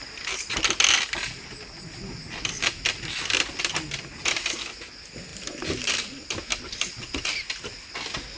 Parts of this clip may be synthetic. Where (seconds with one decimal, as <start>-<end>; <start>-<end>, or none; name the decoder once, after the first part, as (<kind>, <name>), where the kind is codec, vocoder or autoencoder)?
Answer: none